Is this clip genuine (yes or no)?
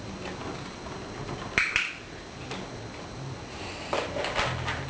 yes